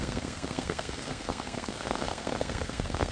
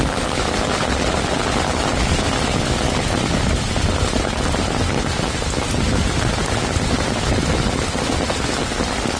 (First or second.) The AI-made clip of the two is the first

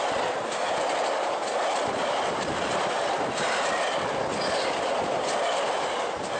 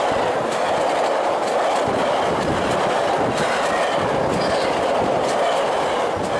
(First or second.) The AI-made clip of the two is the first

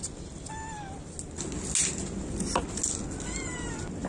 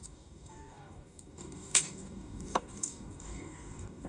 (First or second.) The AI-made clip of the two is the second